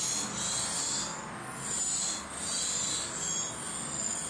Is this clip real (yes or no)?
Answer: yes